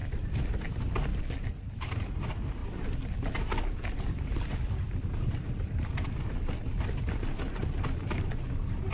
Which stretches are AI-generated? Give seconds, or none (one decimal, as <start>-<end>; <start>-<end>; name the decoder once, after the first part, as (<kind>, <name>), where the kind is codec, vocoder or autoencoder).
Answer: none